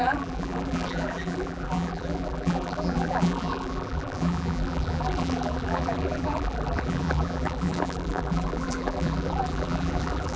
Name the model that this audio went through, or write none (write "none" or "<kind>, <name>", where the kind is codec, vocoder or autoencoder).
vocoder, BigVGAN v2